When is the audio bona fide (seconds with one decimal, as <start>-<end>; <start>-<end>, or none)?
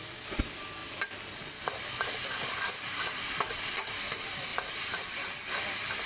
0.0-0.8; 2.5-4.5; 5.2-6.1